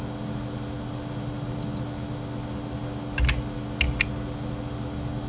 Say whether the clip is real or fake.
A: real